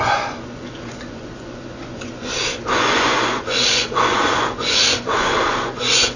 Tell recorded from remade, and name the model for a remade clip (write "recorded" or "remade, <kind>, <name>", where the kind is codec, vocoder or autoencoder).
remade, vocoder, Vocos